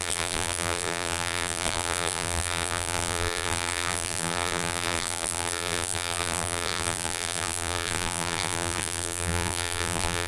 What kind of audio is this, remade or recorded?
remade